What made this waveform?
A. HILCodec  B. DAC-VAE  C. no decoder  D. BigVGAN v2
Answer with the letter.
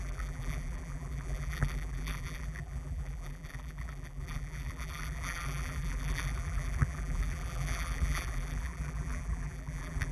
D